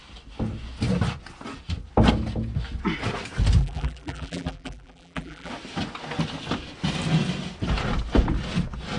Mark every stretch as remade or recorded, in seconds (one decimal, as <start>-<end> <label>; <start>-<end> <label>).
0.0-3.6 recorded; 3.6-5.5 remade; 5.5-9.0 recorded